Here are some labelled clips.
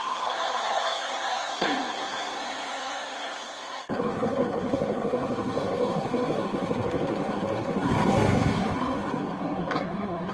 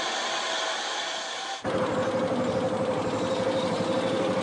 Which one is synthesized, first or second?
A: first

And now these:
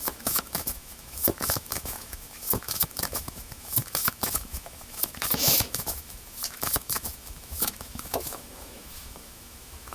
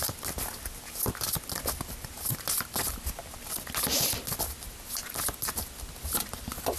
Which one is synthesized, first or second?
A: first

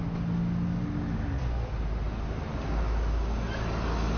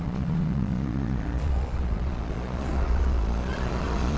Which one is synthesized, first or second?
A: second